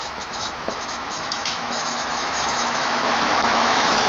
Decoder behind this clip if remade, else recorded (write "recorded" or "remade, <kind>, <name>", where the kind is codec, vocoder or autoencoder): remade, autoencoder, DAC-VAE